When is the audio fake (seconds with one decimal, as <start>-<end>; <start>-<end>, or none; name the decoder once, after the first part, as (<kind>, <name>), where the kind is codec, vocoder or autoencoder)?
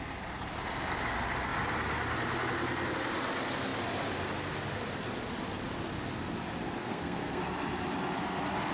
6.8-7.4 (codec, SNAC)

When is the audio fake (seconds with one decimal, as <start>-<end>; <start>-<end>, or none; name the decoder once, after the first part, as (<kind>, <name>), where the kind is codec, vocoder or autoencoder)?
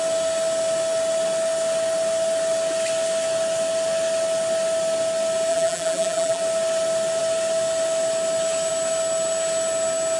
5.5-6.4 (vocoder, BigVGAN v2)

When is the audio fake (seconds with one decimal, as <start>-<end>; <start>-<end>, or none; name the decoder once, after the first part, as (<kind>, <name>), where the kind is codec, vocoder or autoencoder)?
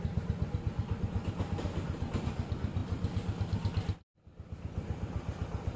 none